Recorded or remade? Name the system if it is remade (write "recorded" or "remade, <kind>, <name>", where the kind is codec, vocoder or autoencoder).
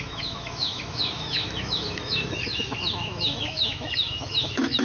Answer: remade, autoencoder, DAC-VAE